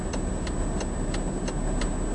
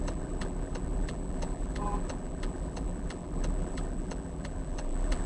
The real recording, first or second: first